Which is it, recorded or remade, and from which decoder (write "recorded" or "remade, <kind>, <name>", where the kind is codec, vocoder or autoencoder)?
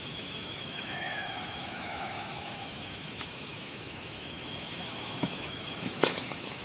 remade, autoencoder, DAC-VAE